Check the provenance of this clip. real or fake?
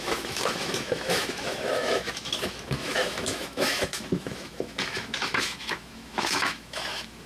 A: fake